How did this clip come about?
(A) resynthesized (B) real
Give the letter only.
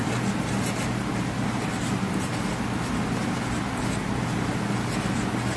B